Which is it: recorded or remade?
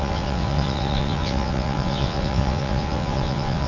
remade